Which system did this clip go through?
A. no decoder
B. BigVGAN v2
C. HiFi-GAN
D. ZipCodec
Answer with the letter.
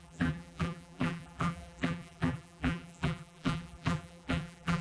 B